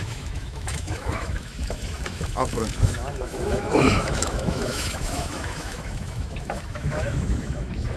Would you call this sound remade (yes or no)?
yes